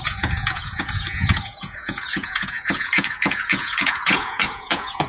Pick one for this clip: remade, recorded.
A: remade